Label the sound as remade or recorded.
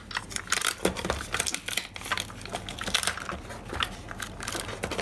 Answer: recorded